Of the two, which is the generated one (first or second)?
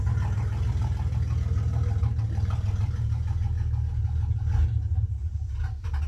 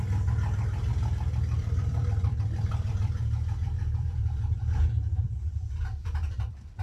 second